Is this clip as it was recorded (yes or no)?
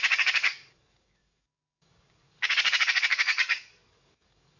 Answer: no